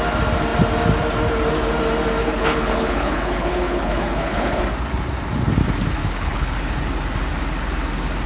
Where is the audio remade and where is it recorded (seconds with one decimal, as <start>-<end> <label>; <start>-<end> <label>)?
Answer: 0.0-2.2 recorded; 2.2-4.6 remade; 4.6-6.0 recorded; 6.0-6.6 remade; 6.6-8.3 recorded